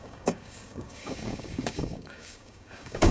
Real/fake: fake